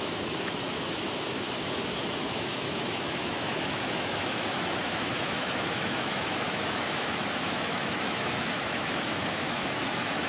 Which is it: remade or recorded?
remade